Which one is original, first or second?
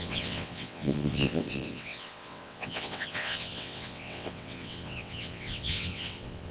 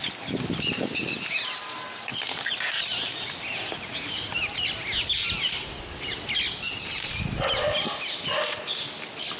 second